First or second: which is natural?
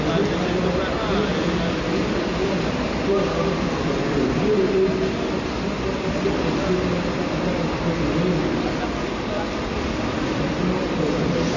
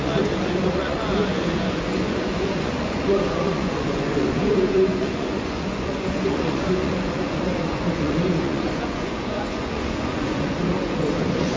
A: first